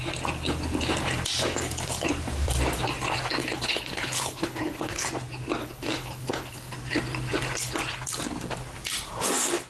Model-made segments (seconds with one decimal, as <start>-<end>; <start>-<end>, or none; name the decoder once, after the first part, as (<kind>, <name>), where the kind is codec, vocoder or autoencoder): 3.4-5.1 (codec, HILCodec); 5.6-6.7

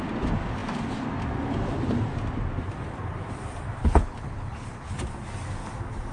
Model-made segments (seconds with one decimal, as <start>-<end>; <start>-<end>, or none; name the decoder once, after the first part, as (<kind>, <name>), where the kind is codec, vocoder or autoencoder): 3.8-5.0 (codec, HILCodec)

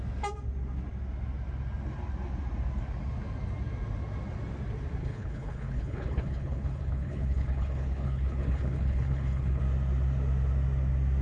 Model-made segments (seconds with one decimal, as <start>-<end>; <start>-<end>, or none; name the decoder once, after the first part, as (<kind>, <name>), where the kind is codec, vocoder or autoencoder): 5.0-9.6 (codec, HILCodec)

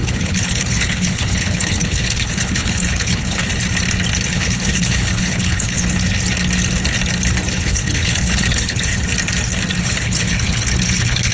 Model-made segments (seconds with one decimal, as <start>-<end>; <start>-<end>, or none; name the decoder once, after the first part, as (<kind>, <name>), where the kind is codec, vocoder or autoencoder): 0.0-3.5 (codec, HILCodec); 4.3-5.8; 7.5-8.9; 9.8-11.3

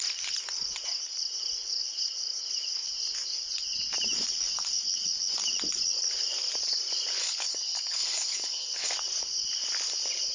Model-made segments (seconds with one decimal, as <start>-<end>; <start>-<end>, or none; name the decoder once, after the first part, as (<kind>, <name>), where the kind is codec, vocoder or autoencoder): 7.2-8.9 (codec, HILCodec)

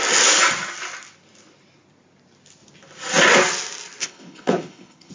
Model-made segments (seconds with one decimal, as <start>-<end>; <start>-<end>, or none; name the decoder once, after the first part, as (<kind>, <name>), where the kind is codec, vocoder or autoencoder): 4.0-5.1 (codec, HILCodec)

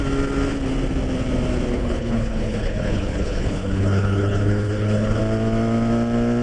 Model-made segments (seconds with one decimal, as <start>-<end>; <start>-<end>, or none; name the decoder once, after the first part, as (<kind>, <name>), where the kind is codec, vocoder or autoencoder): 1.7-5.2 (codec, HILCodec)

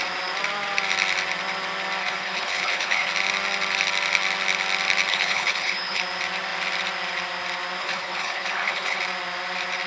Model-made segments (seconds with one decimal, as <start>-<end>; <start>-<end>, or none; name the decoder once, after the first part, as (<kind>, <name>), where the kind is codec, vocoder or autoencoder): 2.0-3.1 (codec, HILCodec); 5.1-6.0; 7.8-9.0